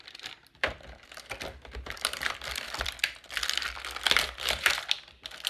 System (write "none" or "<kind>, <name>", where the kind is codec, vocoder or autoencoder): vocoder, BigVGAN v2